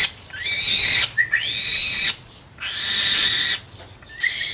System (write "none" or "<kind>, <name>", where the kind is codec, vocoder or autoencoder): none